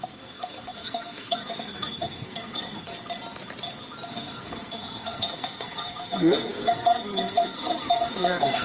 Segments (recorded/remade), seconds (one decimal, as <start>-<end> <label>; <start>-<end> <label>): 0.0-2.9 remade; 2.9-4.1 recorded; 4.1-8.6 remade